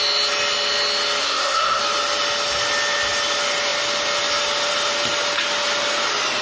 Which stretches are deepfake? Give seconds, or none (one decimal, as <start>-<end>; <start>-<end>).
1.2-1.8